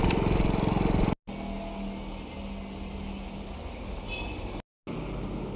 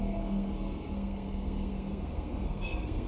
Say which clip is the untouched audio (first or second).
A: first